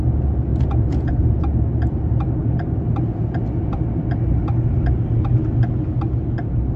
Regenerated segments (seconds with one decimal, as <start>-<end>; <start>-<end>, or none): 0.5-1.4